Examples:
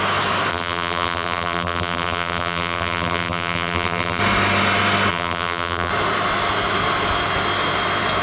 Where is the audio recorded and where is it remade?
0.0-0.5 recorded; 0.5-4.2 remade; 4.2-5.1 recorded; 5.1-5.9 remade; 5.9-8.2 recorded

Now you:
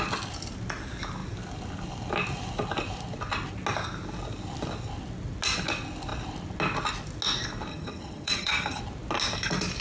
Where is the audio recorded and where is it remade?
0.0-7.7 recorded; 7.7-8.8 remade; 8.8-9.8 recorded

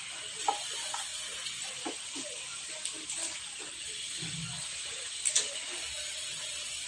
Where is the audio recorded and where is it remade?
0.0-6.9 recorded

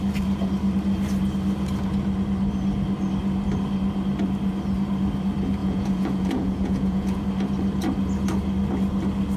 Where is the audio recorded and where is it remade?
0.0-5.6 recorded; 5.6-7.2 remade; 7.2-9.4 recorded

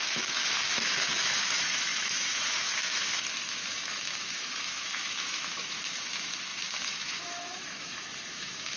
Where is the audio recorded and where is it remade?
0.0-8.8 remade

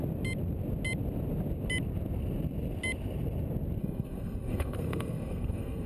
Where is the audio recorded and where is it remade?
0.0-3.8 recorded; 3.8-5.9 remade

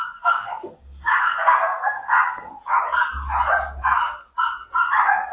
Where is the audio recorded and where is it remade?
0.0-2.5 remade; 2.5-5.3 recorded